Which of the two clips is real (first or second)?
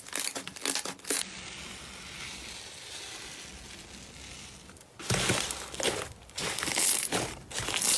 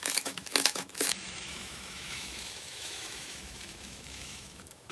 first